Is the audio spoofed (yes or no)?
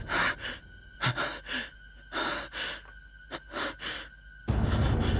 no